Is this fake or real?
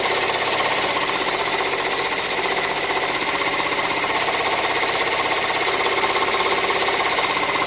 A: real